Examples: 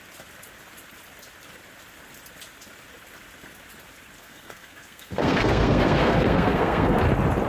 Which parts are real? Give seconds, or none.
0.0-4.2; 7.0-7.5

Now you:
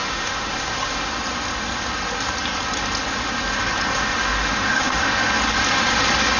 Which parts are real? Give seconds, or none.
1.1-3.9; 5.3-6.4

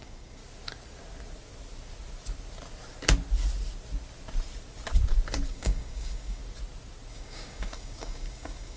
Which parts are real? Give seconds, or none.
0.4-5.5; 6.4-7.1